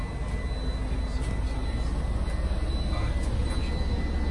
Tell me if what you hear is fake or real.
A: real